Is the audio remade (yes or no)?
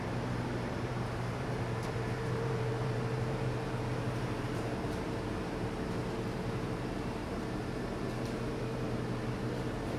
yes